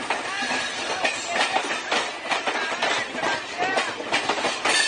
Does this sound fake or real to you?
real